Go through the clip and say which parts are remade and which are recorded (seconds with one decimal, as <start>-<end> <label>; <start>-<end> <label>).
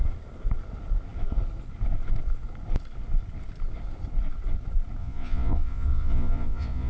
0.0-5.0 recorded; 5.0-6.9 remade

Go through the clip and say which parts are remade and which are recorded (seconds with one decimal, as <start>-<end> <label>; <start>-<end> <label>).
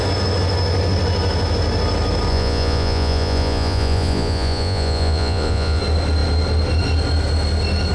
0.0-2.3 recorded; 2.3-5.8 remade; 5.8-7.9 recorded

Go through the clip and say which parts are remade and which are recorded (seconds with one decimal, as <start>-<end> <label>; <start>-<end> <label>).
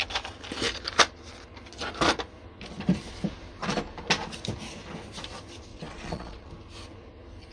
0.0-5.7 recorded; 5.7-6.5 remade; 6.5-7.5 recorded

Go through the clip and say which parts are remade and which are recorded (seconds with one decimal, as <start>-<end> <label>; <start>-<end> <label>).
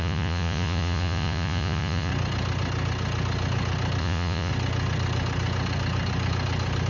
0.0-2.1 remade; 2.1-4.0 recorded; 4.0-4.5 remade; 4.5-6.9 recorded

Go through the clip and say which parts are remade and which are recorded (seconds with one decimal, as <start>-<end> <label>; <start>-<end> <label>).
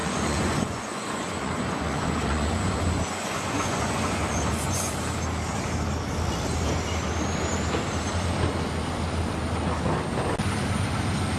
0.0-4.9 remade; 4.9-11.4 recorded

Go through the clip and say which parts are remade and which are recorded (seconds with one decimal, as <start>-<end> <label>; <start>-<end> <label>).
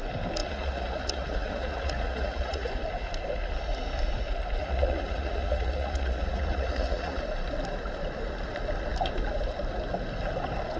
0.0-0.4 recorded; 0.4-2.7 remade; 2.7-4.6 recorded; 4.6-7.2 remade; 7.2-10.8 recorded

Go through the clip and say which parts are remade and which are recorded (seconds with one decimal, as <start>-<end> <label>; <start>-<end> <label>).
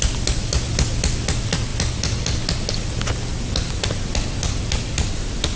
0.0-5.6 recorded